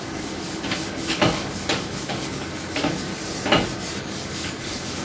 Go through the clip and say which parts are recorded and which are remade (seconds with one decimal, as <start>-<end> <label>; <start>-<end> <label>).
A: 0.0-3.1 remade; 3.1-4.0 recorded; 4.0-5.0 remade